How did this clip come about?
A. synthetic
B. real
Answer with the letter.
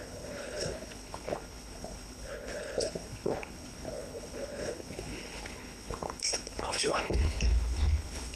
A